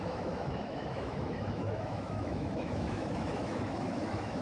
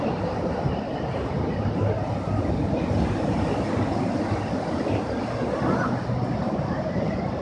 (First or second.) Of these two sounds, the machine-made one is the first